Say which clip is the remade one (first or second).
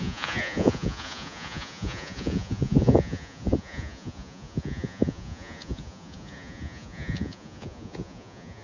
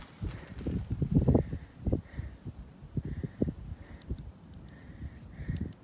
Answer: first